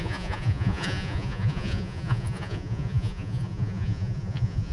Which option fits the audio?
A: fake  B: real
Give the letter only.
A